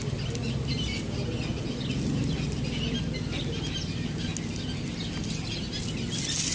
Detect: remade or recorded recorded